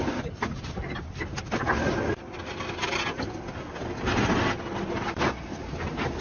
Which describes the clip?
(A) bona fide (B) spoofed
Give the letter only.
A